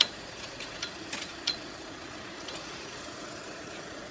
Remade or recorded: remade